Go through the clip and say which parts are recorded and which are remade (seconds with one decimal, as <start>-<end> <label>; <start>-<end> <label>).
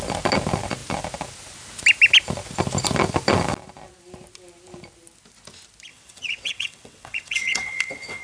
0.0-5.9 recorded; 5.9-8.2 remade